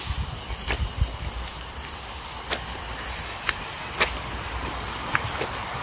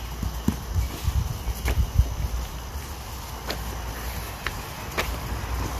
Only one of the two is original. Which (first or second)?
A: second